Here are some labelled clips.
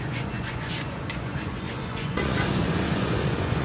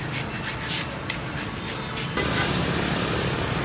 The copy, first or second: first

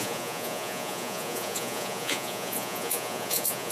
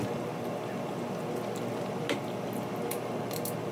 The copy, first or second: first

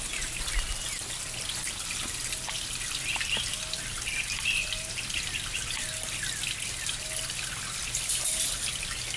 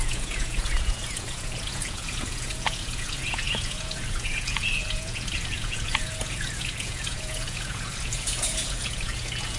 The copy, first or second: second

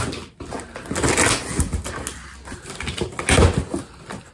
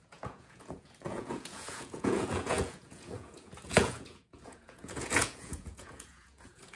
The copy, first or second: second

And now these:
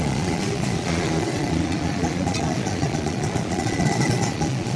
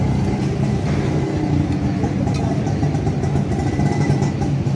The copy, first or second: first